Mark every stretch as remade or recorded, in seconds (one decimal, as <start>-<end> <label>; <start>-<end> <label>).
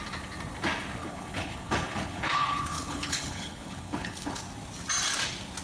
0.0-1.0 recorded; 1.0-4.4 remade; 4.4-5.6 recorded